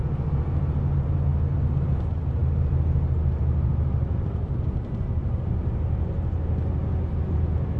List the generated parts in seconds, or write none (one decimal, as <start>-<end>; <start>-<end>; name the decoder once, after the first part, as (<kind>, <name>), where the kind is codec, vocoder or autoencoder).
none